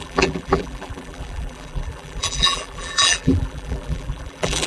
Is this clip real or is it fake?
fake